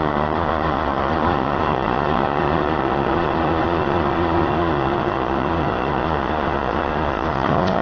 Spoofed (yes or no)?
yes